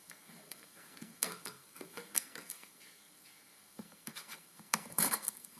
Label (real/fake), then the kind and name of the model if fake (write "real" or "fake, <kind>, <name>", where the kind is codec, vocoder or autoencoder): fake, codec, SNAC